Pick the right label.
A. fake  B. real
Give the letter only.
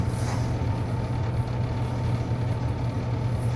B